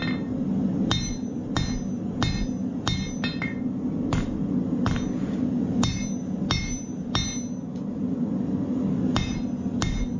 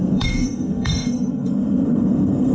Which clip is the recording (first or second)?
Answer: first